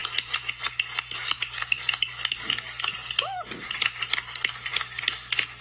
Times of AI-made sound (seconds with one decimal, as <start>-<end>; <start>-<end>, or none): none

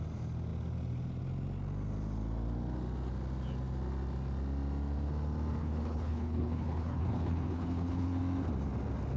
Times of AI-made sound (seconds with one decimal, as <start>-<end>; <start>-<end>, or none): 5.6-8.2

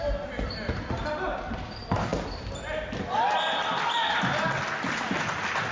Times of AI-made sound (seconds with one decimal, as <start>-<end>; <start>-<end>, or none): none

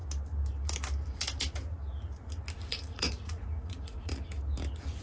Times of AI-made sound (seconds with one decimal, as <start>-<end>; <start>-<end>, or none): 2.7-4.1

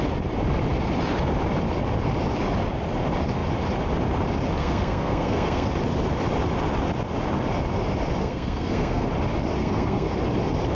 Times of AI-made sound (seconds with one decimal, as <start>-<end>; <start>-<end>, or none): 4.6-5.7; 8.2-9.1; 9.6-10.1

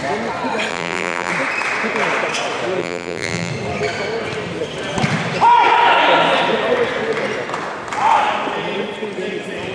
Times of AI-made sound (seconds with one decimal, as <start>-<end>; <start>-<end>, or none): 0.7-1.3; 2.8-3.5